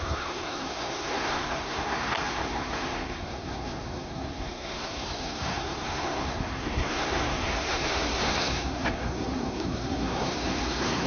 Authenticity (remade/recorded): remade